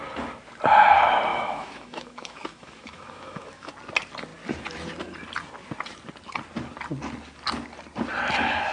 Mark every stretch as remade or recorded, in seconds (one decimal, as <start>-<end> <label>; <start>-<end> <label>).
0.0-1.3 recorded; 1.3-3.7 remade; 3.7-8.7 recorded